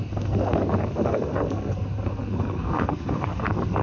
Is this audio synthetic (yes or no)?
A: yes